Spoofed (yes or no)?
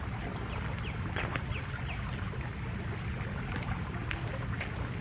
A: no